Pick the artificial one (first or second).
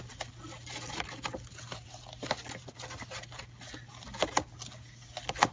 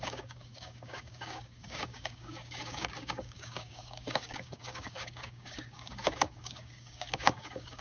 second